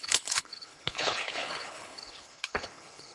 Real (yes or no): no